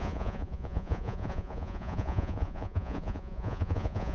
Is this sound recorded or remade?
remade